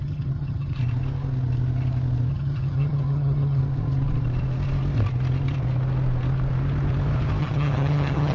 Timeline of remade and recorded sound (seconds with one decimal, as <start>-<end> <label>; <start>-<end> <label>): 0.0-0.8 remade; 0.8-2.3 recorded; 2.3-3.6 remade; 3.6-7.4 recorded; 7.4-8.3 remade